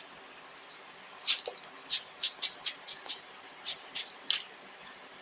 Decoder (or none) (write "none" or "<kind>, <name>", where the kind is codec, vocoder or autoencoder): none